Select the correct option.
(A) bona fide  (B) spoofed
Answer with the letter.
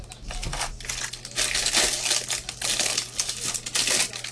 A